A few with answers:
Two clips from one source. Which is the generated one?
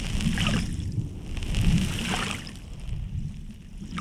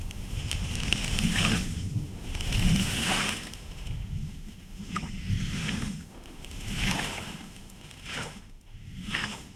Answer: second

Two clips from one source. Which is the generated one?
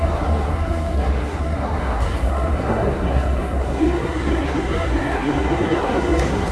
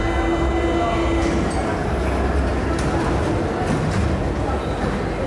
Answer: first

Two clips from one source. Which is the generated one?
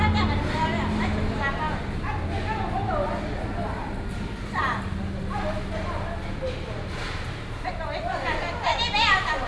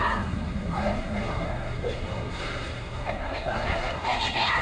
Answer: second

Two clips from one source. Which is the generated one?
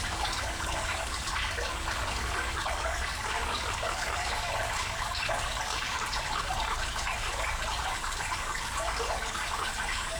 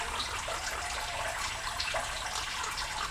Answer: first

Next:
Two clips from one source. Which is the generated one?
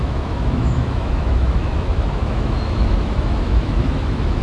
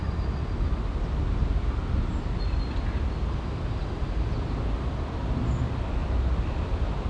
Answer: first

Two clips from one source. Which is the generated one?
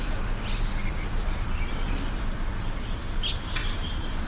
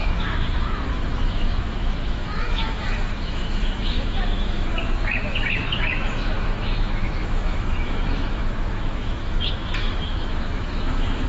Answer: second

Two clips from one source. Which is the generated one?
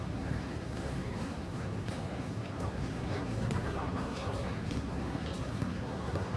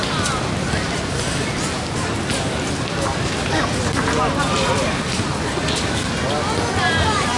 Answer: first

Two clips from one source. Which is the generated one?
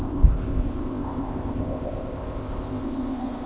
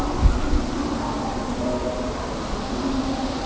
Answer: first